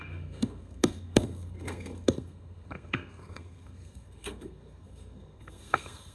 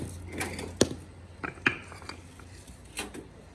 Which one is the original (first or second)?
second